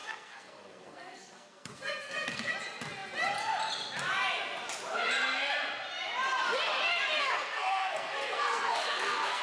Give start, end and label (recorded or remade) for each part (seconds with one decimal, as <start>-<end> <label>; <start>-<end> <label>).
0.0-2.5 remade; 2.5-7.2 recorded; 7.2-9.4 remade